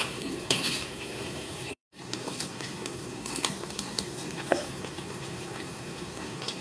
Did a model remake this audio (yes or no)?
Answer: yes